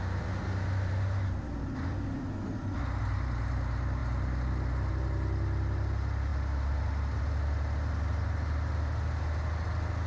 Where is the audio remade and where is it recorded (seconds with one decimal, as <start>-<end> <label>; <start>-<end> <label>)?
0.0-10.1 recorded